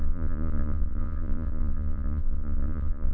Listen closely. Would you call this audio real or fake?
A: fake